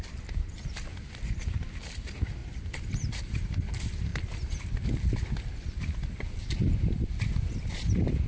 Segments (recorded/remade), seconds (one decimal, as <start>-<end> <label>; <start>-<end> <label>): 0.0-8.3 recorded